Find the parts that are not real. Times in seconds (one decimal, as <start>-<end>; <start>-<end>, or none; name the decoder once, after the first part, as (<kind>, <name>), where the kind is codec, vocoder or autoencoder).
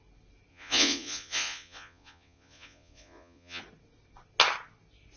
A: 0.5-3.6 (vocoder, Vocos)